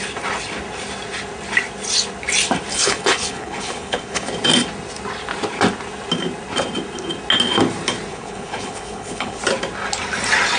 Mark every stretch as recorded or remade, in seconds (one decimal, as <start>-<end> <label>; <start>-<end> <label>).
0.0-2.7 recorded; 2.7-4.3 remade; 4.3-8.1 recorded; 8.1-9.4 remade; 9.4-10.6 recorded